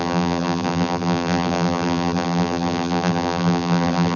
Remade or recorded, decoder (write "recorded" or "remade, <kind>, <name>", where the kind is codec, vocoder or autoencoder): remade, vocoder, BigVGAN v2